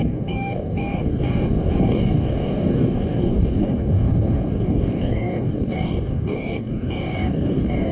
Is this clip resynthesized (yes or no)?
yes